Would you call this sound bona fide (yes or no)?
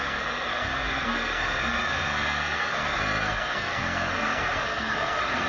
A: no